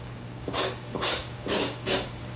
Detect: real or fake fake